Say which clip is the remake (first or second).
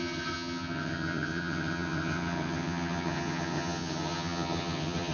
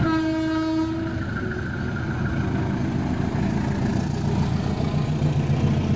first